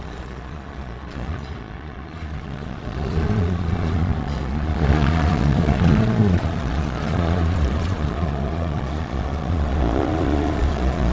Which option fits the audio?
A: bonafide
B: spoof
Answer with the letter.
B